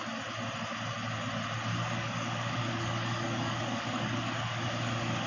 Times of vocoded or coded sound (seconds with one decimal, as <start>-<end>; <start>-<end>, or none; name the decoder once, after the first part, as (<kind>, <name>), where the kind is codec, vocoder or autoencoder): 1.7-5.3 (codec, DAC)